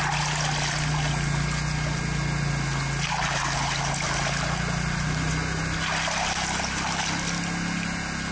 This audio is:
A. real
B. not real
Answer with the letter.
A